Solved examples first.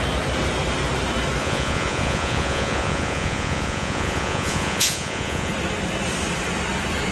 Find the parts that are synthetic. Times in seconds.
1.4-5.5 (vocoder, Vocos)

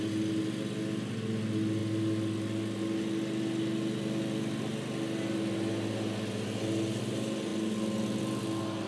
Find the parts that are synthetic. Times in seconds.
none

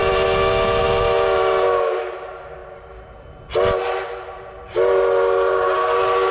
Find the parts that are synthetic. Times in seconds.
none

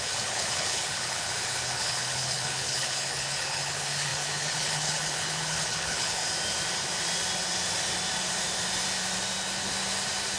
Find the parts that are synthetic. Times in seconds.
0.0-6.2 (codec, HILCodec)